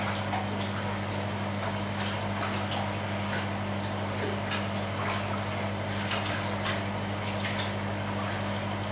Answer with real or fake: real